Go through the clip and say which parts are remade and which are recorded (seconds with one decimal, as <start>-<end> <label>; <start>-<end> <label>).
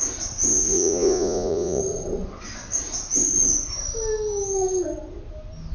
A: 0.0-0.5 recorded; 0.5-1.8 remade; 1.8-5.7 recorded